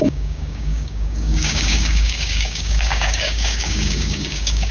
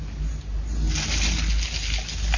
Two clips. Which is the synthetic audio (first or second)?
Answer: first